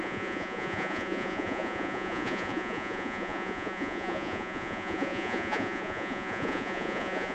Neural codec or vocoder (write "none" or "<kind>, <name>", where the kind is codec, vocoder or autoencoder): vocoder, Vocos